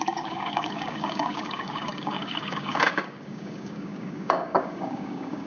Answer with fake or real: fake